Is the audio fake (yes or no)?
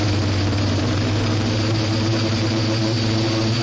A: yes